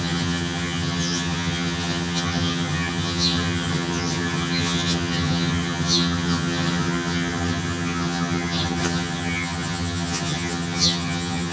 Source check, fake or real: fake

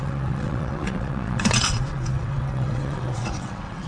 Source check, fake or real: fake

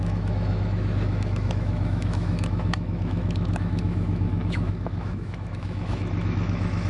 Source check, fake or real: fake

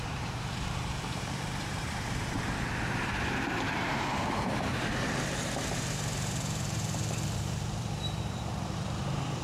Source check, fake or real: fake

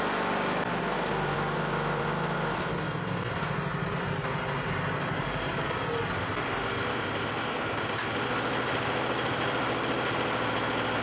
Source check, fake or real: real